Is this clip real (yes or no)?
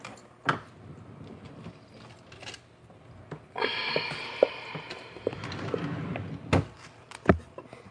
yes